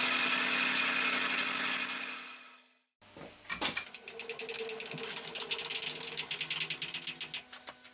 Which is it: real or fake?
real